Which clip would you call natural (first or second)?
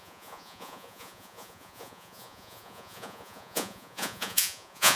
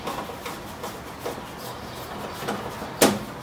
second